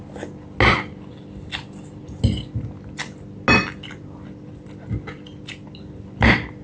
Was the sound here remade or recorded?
recorded